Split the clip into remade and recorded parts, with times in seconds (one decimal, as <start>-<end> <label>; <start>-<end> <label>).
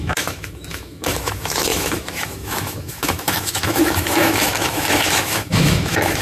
0.0-6.2 remade